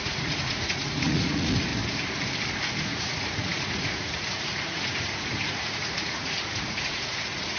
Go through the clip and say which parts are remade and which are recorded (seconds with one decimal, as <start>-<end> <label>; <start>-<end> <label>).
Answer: 0.0-1.7 remade; 1.7-2.8 recorded; 2.8-7.6 remade